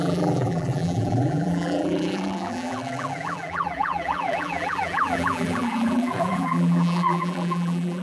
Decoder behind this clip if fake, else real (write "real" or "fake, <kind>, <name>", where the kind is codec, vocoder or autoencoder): fake, vocoder, BigVGAN v2